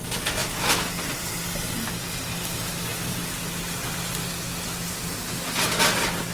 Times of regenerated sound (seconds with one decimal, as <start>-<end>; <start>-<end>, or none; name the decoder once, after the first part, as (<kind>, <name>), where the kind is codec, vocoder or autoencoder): none